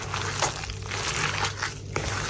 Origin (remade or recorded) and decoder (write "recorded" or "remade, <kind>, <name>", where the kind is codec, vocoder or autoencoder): recorded